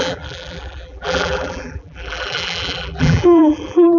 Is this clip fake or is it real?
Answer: fake